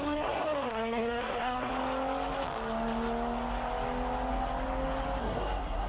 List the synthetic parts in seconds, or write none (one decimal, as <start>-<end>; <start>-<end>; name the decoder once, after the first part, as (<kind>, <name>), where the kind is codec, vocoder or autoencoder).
0.0-1.7 (codec, SNAC); 5.2-5.9